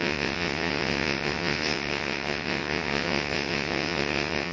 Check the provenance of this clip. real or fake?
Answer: fake